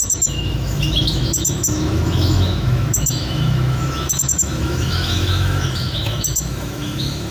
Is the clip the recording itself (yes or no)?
no